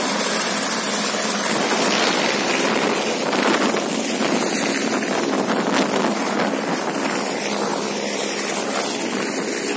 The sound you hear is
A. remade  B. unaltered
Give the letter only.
B